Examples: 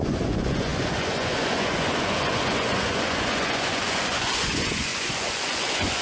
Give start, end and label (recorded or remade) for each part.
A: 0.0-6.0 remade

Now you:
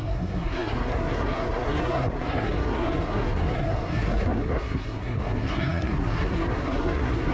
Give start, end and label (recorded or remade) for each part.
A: 0.0-7.3 remade

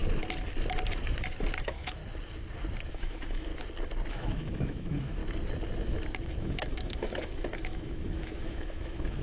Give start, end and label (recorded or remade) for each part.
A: 0.0-1.6 recorded; 1.6-2.0 remade; 2.0-2.9 recorded; 2.9-3.5 remade; 3.5-4.1 recorded; 4.1-5.2 remade; 5.2-6.4 recorded; 6.4-9.2 remade